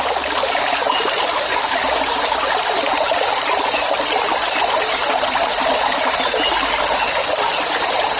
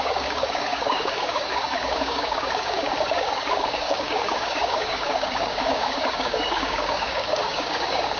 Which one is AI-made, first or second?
second